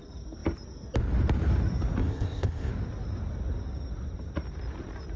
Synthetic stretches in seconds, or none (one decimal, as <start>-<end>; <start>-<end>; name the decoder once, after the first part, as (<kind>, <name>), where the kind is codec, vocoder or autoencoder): 2.0-2.7 (codec, ZipCodec)